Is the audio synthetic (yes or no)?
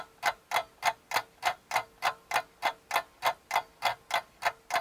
no